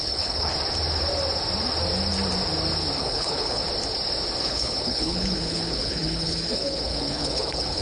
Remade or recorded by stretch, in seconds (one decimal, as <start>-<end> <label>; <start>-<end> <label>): 0.0-0.5 remade; 0.5-3.0 recorded; 3.0-3.6 remade; 3.6-4.4 recorded; 4.4-7.8 remade